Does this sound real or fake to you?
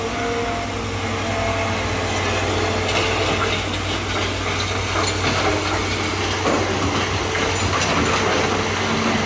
real